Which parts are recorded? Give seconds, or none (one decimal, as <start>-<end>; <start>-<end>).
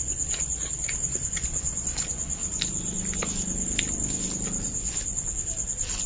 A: 2.4-6.1